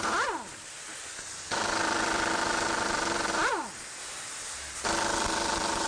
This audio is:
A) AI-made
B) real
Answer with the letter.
B